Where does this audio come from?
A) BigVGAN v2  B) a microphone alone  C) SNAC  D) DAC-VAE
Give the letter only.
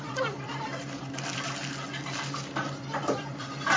A